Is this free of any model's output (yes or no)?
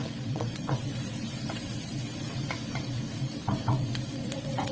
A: no